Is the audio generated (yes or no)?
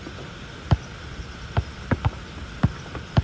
no